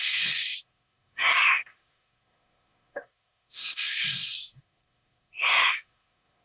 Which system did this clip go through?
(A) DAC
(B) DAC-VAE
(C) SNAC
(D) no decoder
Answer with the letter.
C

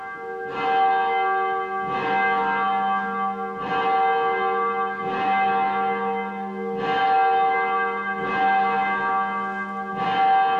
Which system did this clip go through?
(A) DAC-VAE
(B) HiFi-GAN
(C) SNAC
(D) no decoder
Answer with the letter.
D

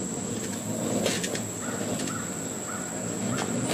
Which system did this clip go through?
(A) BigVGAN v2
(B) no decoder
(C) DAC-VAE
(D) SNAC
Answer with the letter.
B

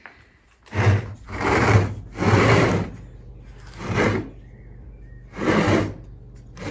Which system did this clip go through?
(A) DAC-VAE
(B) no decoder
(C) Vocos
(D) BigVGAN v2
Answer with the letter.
B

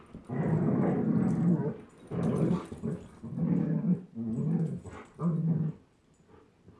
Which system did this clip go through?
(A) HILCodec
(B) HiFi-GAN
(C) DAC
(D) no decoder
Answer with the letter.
D